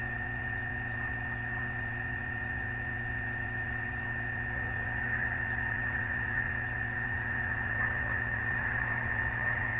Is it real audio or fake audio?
fake